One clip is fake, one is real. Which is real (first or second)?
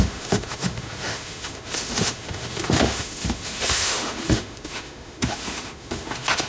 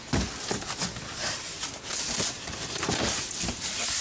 second